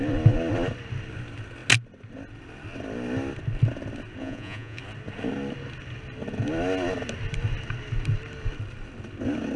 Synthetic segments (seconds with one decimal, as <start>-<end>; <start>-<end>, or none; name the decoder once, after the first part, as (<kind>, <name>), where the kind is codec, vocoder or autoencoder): 4.2-4.8 (vocoder, Vocos)